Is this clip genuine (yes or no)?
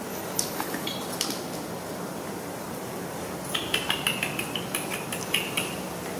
no